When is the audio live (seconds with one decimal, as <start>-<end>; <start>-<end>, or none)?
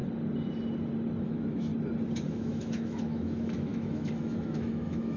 0.0-1.2; 1.7-2.3